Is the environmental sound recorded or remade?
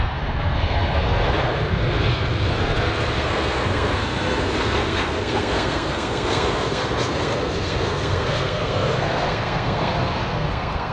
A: remade